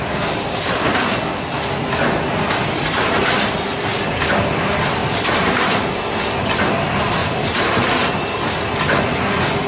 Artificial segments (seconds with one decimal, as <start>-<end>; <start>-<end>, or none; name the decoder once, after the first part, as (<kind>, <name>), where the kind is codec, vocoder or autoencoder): 5.0-6.0 (vocoder, BigVGAN v2); 7.2-8.2